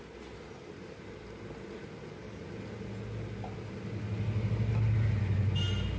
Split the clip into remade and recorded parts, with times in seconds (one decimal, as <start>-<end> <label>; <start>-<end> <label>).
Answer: 0.0-6.0 recorded